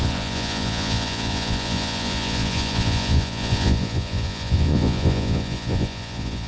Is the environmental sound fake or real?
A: fake